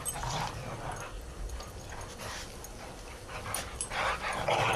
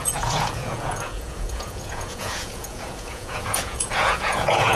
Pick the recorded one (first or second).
first